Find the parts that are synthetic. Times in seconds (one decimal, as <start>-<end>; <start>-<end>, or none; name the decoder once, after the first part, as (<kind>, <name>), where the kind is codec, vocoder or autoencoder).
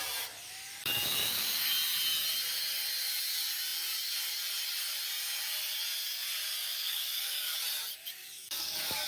0.8-1.7 (codec, DAC); 6.6-7.6; 8.0-9.1